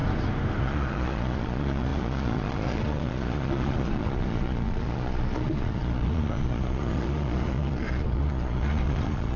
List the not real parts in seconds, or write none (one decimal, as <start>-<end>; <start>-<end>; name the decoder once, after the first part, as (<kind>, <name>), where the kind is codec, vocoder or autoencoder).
0.6-9.4 (vocoder, Vocos)